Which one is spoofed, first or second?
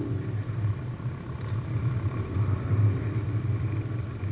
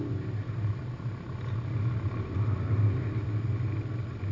first